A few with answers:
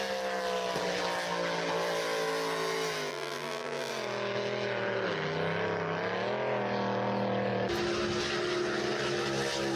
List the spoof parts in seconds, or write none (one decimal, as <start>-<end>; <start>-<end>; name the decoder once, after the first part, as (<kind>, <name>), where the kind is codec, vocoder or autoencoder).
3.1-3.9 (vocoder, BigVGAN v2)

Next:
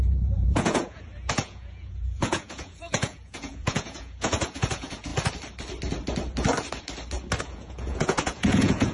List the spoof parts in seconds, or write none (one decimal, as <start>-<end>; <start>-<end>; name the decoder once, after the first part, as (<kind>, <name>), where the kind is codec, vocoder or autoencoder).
0.0-5.1 (vocoder, Vocos); 7.4-8.9

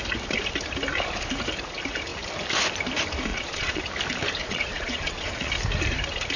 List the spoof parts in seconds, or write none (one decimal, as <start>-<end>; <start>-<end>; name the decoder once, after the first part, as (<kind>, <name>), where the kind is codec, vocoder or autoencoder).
3.3-3.8 (vocoder, Vocos); 4.4-5.5